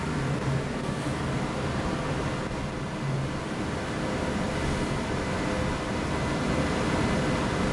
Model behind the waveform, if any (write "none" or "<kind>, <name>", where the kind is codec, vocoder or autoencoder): none